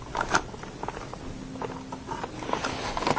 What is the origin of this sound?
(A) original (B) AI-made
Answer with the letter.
A